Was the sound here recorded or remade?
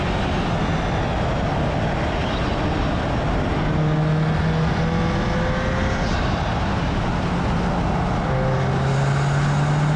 recorded